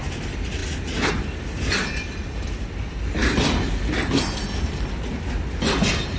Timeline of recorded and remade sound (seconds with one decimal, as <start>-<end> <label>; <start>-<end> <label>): 0.0-6.2 recorded

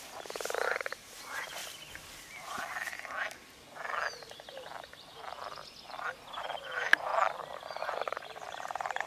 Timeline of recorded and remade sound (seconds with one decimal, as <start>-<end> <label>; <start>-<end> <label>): 0.0-1.6 remade; 1.6-6.4 recorded; 6.4-7.1 remade; 7.1-7.9 recorded; 7.9-9.1 remade

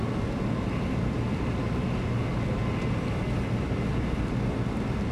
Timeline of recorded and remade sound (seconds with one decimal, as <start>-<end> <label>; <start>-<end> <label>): 0.0-5.1 recorded

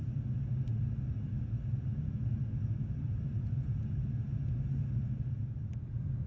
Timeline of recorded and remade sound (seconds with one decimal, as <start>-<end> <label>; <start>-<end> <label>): 0.0-6.3 recorded